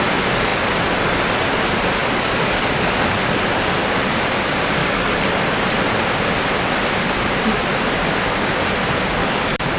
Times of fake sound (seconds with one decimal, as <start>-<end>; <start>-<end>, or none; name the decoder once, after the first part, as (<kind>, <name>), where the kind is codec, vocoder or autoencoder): 2.0-3.2 (codec, DAC); 4.8-5.3; 9.2-9.8